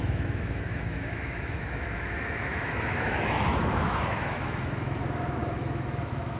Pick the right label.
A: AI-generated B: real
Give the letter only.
A